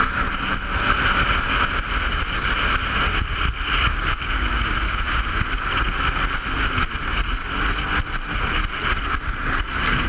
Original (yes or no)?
yes